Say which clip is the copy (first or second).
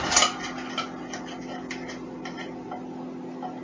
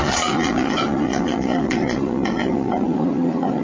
second